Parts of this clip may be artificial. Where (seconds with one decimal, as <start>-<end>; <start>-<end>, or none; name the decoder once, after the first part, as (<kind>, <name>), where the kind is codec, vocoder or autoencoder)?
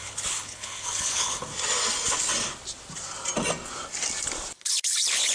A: 0.0-1.5 (codec, HILCodec); 4.7-5.3